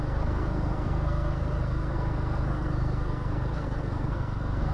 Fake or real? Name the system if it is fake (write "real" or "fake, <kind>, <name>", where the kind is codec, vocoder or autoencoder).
fake, codec, SNAC